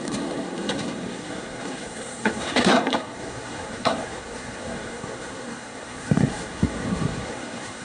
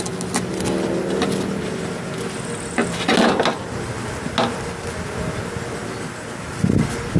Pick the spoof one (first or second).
first